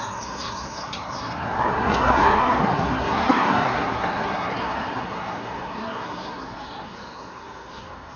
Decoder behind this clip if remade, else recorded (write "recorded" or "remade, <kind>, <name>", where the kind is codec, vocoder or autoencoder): remade, codec, SNAC